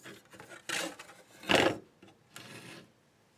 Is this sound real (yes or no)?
yes